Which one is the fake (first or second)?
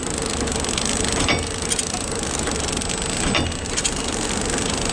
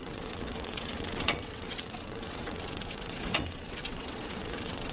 second